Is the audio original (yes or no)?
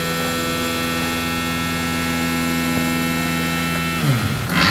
yes